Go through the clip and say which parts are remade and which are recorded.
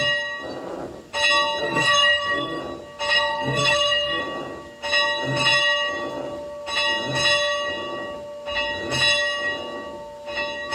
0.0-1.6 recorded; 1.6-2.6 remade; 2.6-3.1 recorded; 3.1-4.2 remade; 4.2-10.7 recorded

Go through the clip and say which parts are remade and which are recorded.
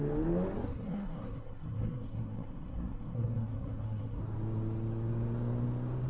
0.0-0.6 recorded; 0.6-4.2 remade; 4.2-6.1 recorded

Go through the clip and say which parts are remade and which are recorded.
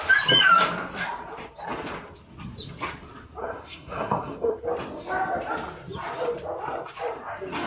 0.0-3.4 recorded; 3.4-4.6 remade; 4.6-7.7 recorded